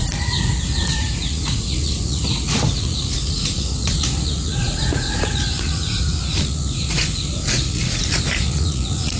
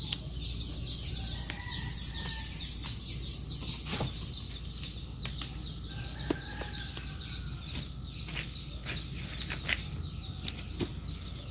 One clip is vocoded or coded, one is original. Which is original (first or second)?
second